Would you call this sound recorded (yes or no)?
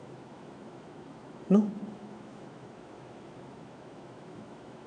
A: no